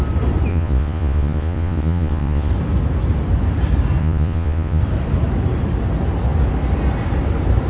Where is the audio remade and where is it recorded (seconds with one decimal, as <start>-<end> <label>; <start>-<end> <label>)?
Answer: 0.0-0.5 recorded; 0.5-2.5 remade; 2.5-4.0 recorded; 4.0-4.8 remade; 4.8-7.7 recorded